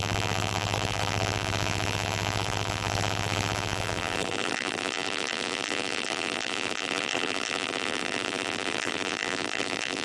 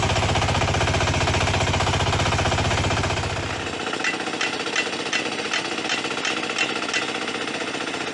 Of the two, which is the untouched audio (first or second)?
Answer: second